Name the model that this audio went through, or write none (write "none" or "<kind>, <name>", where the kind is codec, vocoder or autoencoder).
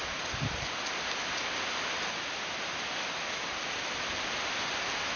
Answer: none